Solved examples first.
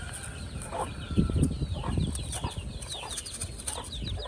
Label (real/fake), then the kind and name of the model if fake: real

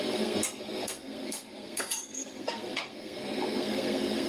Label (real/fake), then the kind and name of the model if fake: fake, codec, SNAC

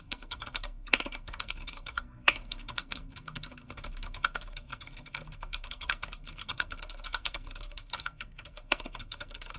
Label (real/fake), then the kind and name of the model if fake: fake, codec, SNAC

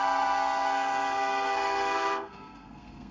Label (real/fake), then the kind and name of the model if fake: fake, codec, SNAC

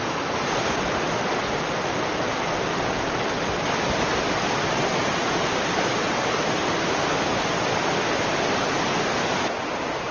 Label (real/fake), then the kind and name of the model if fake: real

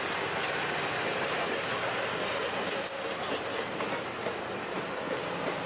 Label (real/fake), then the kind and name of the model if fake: real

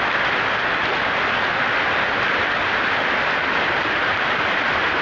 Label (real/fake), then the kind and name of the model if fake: real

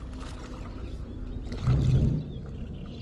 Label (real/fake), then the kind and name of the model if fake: real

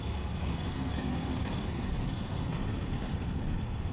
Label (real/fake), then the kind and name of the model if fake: fake, codec, SNAC